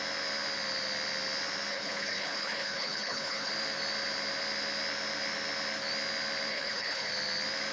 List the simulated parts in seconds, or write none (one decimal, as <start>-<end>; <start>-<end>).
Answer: 1.7-3.5; 6.5-7.1